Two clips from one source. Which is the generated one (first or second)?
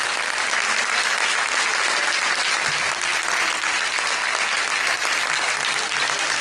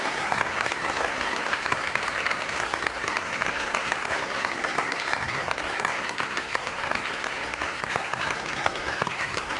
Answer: second